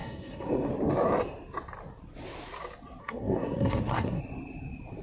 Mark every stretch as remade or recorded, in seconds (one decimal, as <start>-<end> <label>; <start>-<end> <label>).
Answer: 0.0-0.7 remade; 0.7-3.0 recorded; 3.0-4.2 remade; 4.2-5.0 recorded